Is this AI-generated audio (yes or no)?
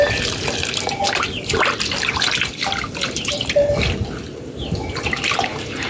yes